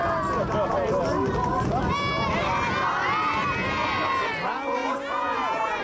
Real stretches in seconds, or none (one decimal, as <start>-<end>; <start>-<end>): 0.0-4.8